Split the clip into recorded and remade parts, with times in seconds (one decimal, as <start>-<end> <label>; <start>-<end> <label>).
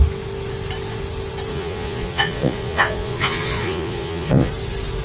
0.0-1.5 recorded; 1.5-4.5 remade; 4.5-5.0 recorded